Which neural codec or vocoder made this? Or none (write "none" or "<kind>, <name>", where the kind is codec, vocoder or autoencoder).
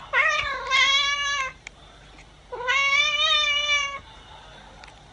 none